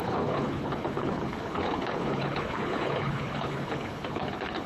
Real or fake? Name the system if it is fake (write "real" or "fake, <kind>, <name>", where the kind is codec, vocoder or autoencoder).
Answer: fake, codec, HILCodec